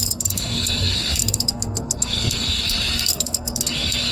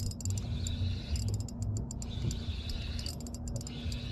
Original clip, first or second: second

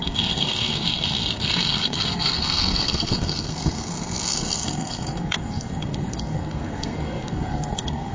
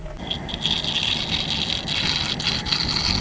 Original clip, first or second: second